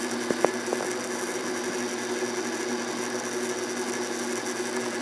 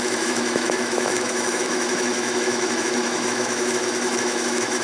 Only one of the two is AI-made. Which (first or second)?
second